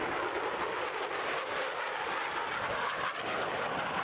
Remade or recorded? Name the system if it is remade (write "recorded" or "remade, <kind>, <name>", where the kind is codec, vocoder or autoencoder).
recorded